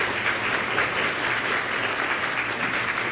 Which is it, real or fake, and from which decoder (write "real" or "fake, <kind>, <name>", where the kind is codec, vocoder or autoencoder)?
real